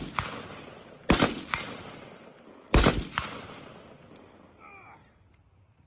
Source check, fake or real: real